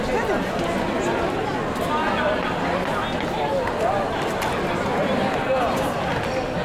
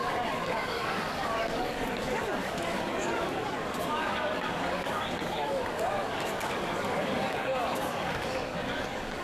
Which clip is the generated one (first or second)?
second